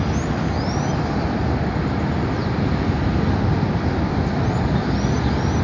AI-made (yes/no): no